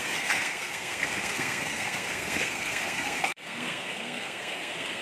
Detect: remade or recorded remade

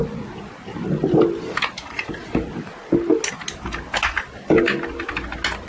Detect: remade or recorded recorded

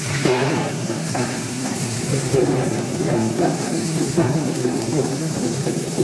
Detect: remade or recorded remade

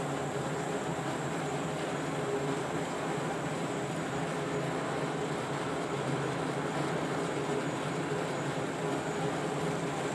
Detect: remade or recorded recorded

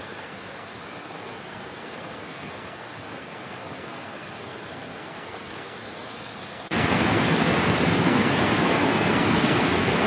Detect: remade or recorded remade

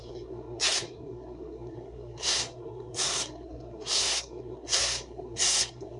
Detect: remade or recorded remade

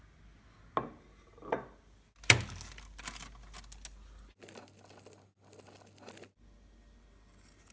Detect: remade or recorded recorded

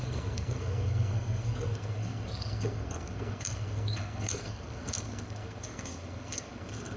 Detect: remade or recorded remade